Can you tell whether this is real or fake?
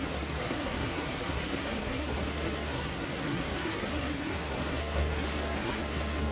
fake